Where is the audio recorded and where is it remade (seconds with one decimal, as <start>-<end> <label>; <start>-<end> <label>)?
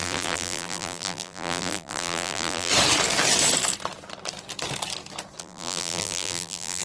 0.0-2.7 remade; 2.7-5.4 recorded; 5.4-6.8 remade